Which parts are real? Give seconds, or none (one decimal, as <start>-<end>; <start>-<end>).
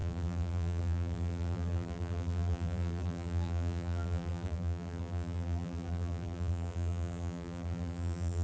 none